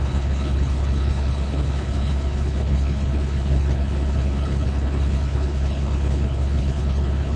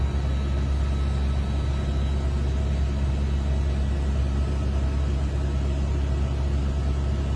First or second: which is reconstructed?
first